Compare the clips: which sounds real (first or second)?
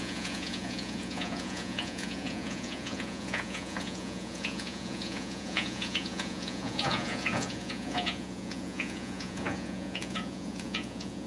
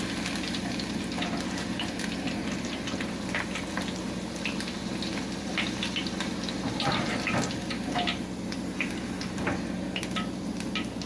second